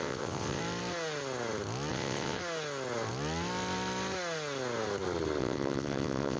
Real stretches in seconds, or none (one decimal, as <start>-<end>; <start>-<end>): 0.6-1.9; 2.4-5.4